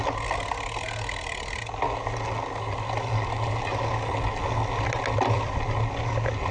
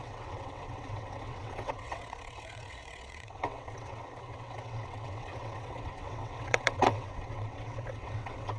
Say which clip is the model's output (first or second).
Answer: second